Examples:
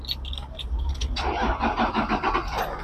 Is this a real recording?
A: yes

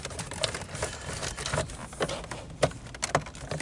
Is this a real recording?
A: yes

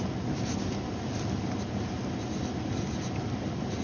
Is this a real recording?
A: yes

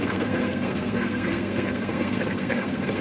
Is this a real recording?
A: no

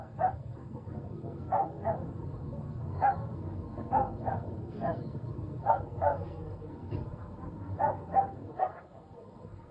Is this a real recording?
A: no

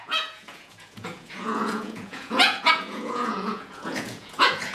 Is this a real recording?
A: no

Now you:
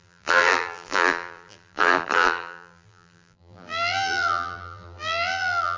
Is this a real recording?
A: no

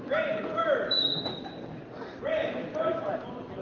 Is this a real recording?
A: no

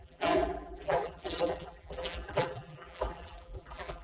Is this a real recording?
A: no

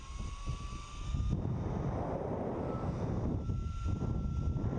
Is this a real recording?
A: yes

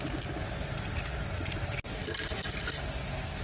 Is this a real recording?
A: yes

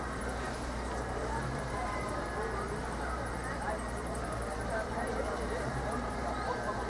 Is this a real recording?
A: no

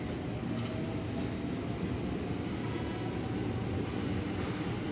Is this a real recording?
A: yes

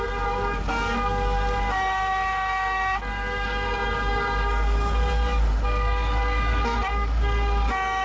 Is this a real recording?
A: no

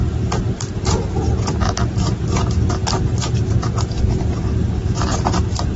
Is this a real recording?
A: yes